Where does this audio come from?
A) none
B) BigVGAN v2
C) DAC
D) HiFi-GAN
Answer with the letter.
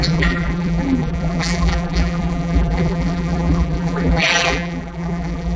B